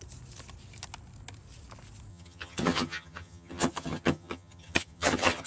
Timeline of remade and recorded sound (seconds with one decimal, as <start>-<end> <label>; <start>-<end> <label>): 0.0-2.1 recorded; 2.1-5.5 remade